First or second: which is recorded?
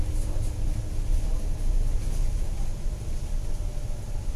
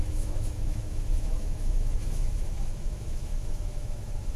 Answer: first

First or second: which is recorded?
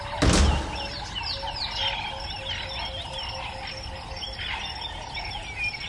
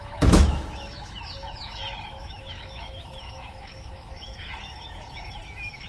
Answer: first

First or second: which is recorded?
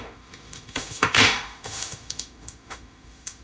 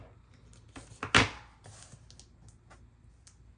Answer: second